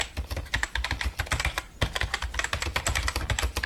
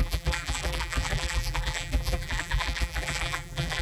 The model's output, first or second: second